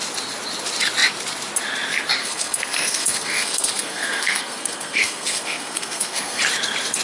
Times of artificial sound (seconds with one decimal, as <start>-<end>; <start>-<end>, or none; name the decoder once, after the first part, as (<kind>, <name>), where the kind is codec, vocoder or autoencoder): 2.2-6.4 (codec, SNAC)